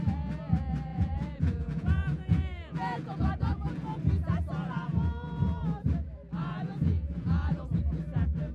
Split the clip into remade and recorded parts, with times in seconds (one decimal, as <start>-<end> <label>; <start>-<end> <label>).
0.0-0.9 recorded; 0.9-4.0 remade; 4.0-6.4 recorded; 6.4-7.8 remade; 7.8-8.5 recorded